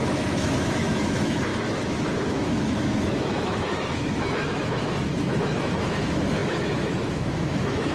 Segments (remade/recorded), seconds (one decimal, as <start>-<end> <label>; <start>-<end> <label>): 0.0-7.9 remade